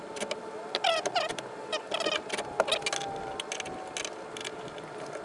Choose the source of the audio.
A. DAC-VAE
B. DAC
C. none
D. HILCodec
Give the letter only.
C